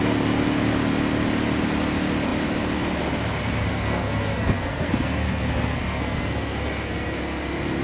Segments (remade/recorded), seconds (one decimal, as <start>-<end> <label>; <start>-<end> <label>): 0.0-3.7 recorded; 3.7-7.2 remade; 7.2-7.8 recorded